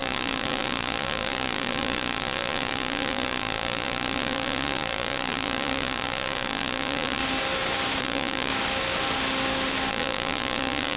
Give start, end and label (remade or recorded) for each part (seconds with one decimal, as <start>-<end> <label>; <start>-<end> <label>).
0.0-7.2 remade; 7.2-8.0 recorded; 8.0-8.5 remade; 8.5-9.9 recorded; 9.9-11.0 remade